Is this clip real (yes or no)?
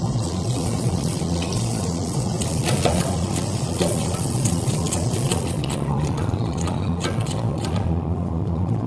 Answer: no